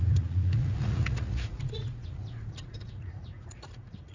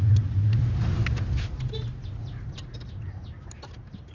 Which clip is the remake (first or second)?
first